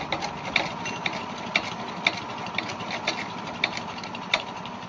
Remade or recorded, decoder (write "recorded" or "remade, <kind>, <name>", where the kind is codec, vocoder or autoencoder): recorded